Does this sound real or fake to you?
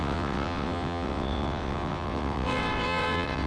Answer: fake